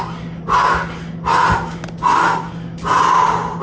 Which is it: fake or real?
real